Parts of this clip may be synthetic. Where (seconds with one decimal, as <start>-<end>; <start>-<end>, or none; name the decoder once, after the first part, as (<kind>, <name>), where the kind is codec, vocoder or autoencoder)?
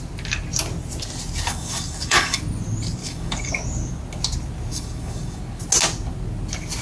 1.5-2.4 (codec, DAC); 3.0-3.5; 4.7-5.4